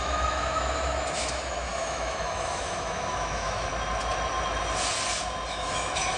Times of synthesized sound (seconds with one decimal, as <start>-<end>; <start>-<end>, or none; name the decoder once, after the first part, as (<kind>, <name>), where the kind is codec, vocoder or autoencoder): 0.0-3.7 (autoencoder, DAC-VAE); 5.5-6.2